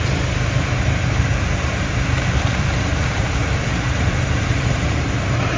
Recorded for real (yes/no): no